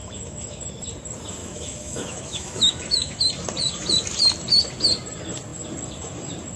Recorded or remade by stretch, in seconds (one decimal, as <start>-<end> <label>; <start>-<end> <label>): 0.0-0.7 remade; 0.7-1.4 recorded; 1.4-3.2 remade; 3.2-6.6 recorded